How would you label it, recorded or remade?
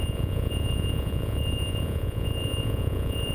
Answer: remade